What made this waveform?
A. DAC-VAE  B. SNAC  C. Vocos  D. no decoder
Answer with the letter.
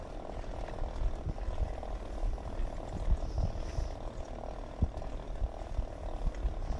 D